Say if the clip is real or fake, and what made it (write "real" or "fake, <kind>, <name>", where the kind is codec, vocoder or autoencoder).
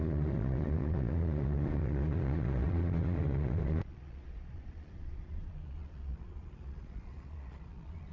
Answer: fake, vocoder, Vocos